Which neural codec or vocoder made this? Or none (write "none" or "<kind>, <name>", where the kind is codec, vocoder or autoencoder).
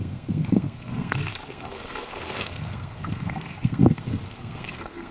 codec, SNAC